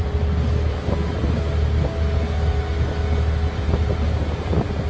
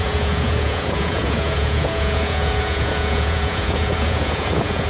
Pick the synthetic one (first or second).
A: second